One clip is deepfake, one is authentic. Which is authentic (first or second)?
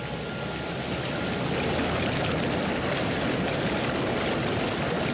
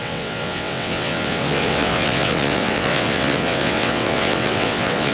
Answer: first